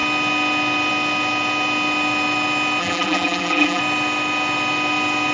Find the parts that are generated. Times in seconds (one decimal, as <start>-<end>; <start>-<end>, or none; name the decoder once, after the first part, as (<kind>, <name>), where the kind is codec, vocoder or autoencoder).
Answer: 2.8-3.8 (vocoder, BigVGAN v2)